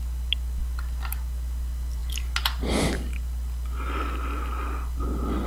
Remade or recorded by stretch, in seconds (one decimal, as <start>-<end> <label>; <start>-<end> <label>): 0.0-5.5 recorded